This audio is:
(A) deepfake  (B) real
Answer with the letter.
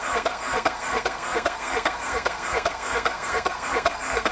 A